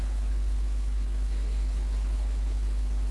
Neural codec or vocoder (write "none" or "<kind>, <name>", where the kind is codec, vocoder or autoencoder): codec, HILCodec